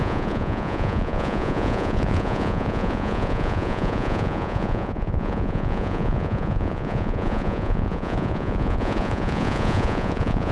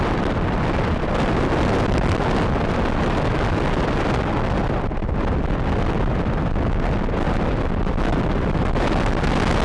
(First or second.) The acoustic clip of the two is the second